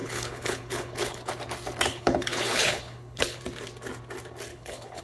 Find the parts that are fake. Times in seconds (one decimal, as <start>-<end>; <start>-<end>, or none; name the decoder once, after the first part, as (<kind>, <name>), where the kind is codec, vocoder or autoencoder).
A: 0.0-1.3 (codec, HILCodec); 1.9-3.4; 4.5-5.0